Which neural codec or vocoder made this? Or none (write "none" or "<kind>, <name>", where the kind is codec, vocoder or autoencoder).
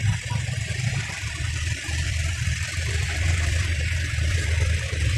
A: vocoder, BigVGAN v2